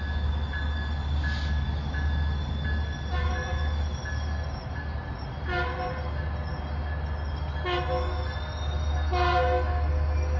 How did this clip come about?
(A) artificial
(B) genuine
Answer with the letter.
B